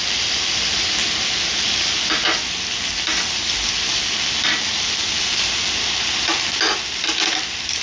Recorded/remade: recorded